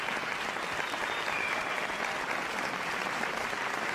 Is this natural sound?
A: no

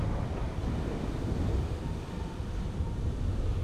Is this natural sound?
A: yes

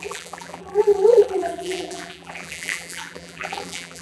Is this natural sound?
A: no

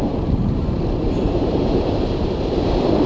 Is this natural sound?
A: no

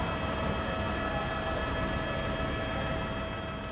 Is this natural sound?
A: yes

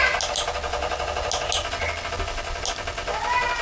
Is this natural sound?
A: yes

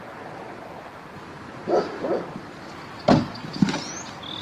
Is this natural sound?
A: yes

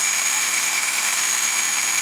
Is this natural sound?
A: no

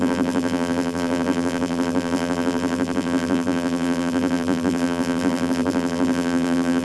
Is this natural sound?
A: no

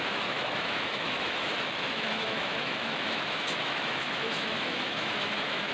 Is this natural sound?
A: no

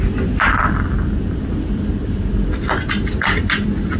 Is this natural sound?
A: yes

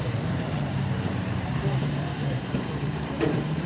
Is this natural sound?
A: no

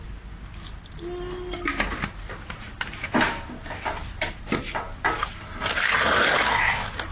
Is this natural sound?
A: yes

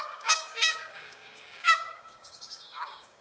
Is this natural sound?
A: no